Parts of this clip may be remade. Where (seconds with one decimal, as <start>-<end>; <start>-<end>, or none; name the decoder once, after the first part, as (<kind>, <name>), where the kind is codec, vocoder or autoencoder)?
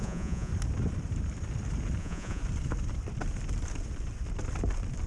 0.0-0.5 (vocoder, Vocos); 2.0-2.4